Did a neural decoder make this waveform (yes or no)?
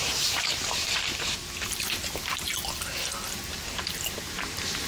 yes